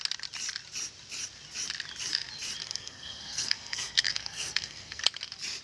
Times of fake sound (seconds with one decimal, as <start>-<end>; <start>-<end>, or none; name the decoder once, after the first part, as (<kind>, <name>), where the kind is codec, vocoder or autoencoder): 2.6-5.0 (codec, SNAC)